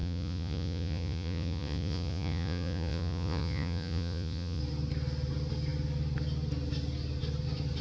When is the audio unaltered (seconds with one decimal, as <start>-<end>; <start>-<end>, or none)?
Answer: 4.6-7.8